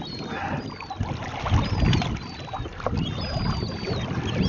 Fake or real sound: real